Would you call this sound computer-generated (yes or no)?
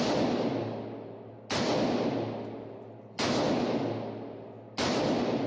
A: no